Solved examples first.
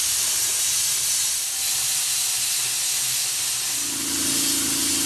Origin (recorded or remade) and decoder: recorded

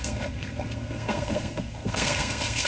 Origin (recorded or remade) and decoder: remade, codec, SNAC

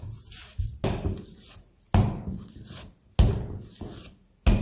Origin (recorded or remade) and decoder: recorded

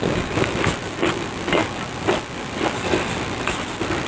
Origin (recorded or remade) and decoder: recorded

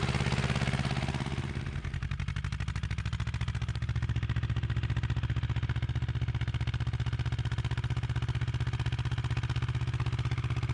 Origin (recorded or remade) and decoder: recorded